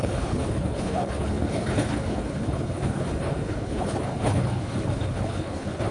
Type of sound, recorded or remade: remade